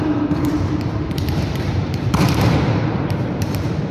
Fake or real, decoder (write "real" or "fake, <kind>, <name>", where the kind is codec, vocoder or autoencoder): fake, vocoder, BigVGAN v2